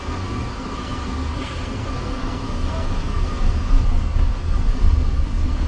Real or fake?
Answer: fake